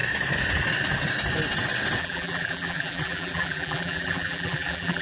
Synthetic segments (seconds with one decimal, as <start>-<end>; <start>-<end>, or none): 2.0-5.0